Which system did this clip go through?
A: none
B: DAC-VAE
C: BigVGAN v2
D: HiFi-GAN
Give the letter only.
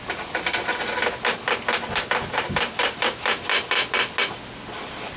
A